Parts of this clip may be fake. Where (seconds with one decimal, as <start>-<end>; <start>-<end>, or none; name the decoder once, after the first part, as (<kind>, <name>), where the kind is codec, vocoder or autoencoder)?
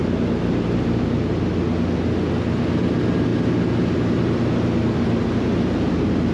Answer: none